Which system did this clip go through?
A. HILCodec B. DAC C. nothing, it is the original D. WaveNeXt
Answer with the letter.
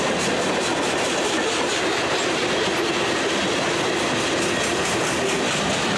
C